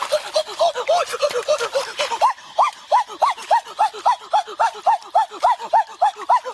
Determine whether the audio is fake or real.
real